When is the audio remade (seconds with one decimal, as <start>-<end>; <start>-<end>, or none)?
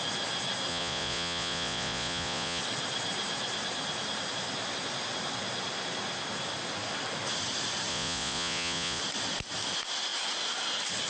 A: 0.7-2.6; 7.9-9.0